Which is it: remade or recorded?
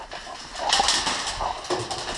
recorded